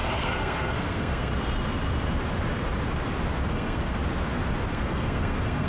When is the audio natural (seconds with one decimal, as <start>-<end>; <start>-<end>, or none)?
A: 1.3-3.5; 4.0-4.7

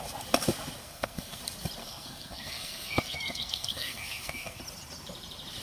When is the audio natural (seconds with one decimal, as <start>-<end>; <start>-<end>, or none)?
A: 0.0-0.8; 1.4-1.8; 4.6-5.6

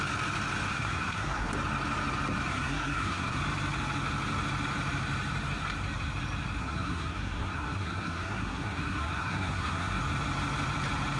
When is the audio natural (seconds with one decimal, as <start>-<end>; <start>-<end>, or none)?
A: 0.0-0.7; 1.5-2.5; 3.4-6.6; 10.0-11.2

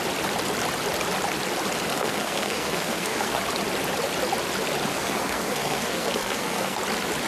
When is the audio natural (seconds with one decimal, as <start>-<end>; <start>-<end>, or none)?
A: 0.0-1.9; 3.4-4.9; 6.8-7.3

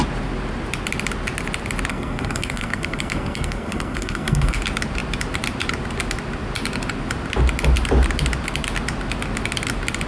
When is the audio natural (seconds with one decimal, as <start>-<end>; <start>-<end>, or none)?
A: 0.0-1.9; 4.6-10.1

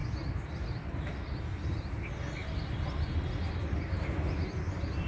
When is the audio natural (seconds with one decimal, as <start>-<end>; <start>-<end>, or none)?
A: 0.0-5.1